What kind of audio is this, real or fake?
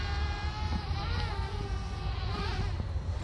real